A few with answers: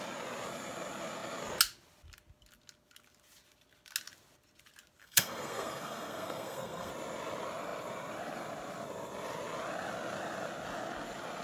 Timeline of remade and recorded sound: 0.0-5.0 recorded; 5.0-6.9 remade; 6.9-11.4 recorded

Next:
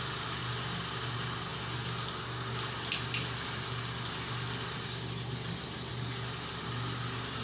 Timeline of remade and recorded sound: 0.0-7.4 recorded

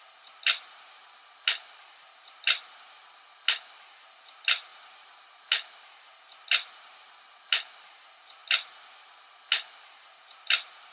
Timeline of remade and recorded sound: 0.0-10.9 recorded

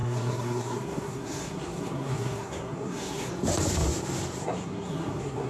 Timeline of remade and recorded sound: 0.0-3.3 remade; 3.3-4.4 recorded; 4.4-5.5 remade

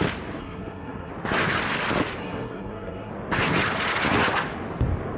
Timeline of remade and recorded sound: 0.0-0.4 recorded; 0.4-1.1 remade; 1.1-2.2 recorded; 2.2-3.1 remade; 3.1-5.2 recorded

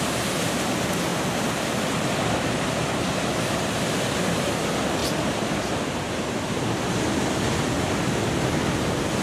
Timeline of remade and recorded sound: 0.0-9.2 recorded

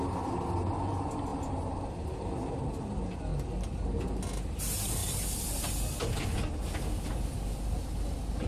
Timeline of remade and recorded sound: 0.0-8.5 recorded